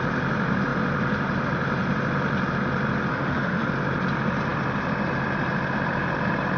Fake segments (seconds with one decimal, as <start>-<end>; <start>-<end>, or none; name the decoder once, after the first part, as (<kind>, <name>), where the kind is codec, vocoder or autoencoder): 3.1-3.7 (autoencoder, DAC-VAE)